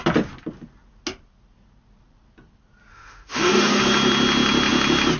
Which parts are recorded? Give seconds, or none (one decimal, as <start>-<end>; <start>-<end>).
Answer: 0.0-2.9; 3.8-5.2